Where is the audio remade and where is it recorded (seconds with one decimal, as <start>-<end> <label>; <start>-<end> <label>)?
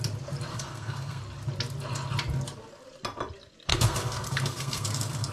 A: 0.0-0.5 recorded; 0.5-1.2 remade; 1.2-3.7 recorded; 3.7-5.3 remade